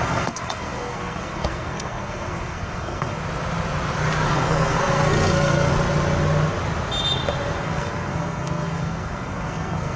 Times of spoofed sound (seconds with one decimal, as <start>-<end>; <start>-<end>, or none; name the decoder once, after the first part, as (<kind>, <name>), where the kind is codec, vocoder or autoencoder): 0.0-3.2 (codec, SNAC); 4.3-5.7; 7.6-10.0